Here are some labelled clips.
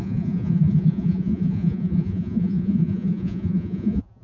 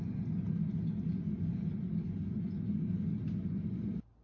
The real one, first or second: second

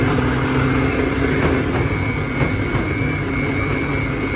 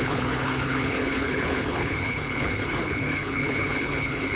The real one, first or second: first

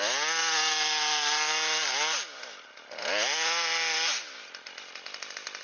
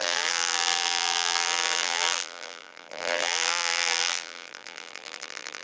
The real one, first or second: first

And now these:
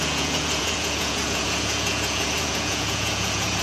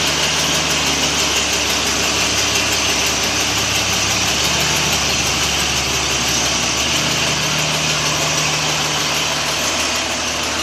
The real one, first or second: second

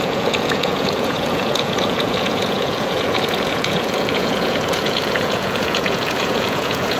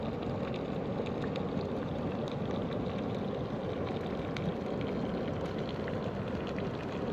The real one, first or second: second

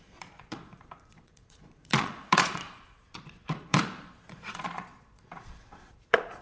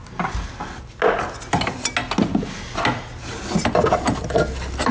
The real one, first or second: second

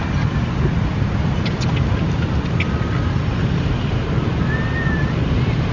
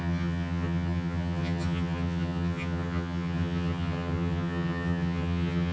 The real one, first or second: first